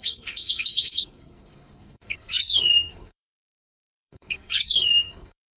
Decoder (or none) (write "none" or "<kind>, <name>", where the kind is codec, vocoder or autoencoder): codec, SNAC